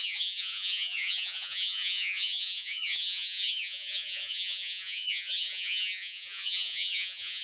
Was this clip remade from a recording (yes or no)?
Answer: yes